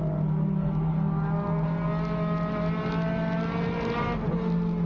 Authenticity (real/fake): real